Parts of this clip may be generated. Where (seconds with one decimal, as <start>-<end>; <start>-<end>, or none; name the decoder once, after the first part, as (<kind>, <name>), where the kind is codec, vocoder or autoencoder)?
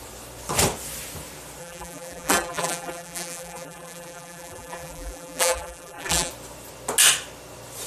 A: 1.6-6.3 (vocoder, BigVGAN v2)